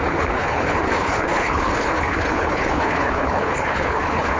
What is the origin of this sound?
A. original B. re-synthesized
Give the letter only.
B